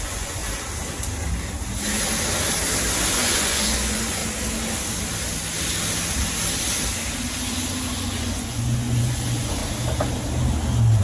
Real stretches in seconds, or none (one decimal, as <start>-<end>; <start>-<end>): 0.4-3.1; 4.2-7.9; 9.6-11.0